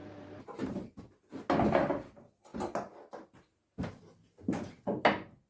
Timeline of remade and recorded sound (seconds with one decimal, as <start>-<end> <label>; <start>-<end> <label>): 0.0-1.0 remade; 1.0-5.5 recorded